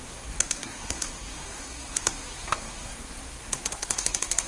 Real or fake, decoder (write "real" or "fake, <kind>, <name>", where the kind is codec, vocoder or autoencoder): fake, codec, SNAC